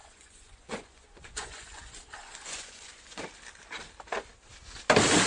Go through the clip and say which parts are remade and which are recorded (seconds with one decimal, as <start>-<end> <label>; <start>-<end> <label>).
0.0-3.2 remade; 3.2-5.3 recorded